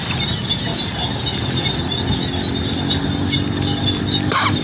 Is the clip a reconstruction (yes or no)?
no